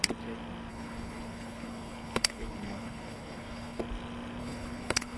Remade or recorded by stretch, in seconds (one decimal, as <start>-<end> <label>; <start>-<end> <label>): 0.0-0.7 recorded; 0.7-3.8 remade; 3.8-4.4 recorded; 4.4-5.2 remade